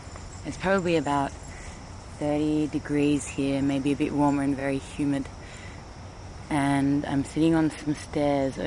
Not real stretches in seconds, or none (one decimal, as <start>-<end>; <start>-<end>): none